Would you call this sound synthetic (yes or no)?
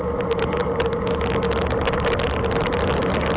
no